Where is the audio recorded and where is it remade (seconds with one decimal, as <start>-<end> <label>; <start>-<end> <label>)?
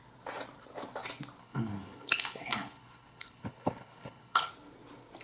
0.0-1.4 recorded; 1.4-4.5 remade; 4.5-5.2 recorded